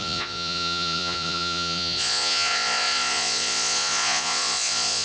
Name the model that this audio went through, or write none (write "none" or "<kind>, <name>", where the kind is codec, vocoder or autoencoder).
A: vocoder, Vocos